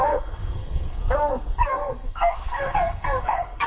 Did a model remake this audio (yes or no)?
yes